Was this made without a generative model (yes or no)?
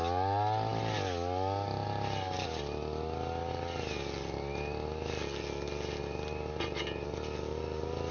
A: yes